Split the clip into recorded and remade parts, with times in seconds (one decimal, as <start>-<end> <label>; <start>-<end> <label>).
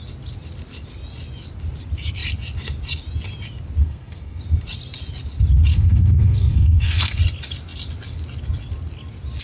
0.0-3.8 recorded; 3.8-4.4 remade; 4.4-5.7 recorded; 5.7-7.2 remade; 7.2-9.4 recorded